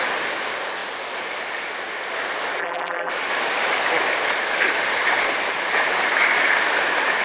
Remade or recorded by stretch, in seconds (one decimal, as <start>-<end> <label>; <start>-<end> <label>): 0.0-2.6 recorded; 2.6-3.1 remade; 3.1-7.2 recorded